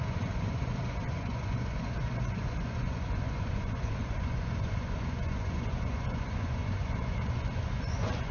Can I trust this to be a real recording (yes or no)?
no